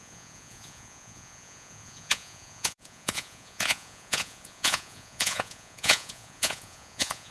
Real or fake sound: fake